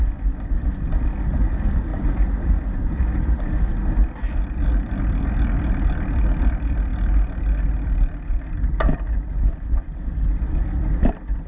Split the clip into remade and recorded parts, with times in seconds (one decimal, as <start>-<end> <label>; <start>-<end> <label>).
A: 0.0-1.9 recorded; 1.9-3.4 remade; 3.4-11.5 recorded